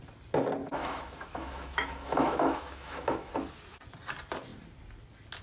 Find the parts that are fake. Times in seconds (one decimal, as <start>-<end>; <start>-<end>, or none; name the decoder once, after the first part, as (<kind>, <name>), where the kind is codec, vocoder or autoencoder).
0.6-3.3 (autoencoder, DAC-VAE)